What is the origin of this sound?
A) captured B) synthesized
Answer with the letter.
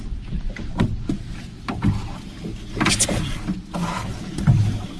A